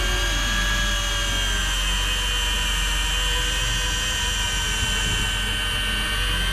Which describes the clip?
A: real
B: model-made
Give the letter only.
A